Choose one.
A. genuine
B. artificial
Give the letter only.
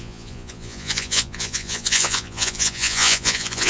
B